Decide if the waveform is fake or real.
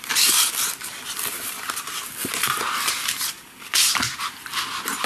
fake